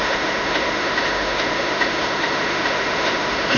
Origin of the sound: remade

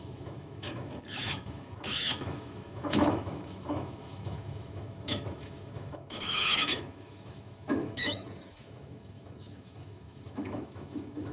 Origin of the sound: remade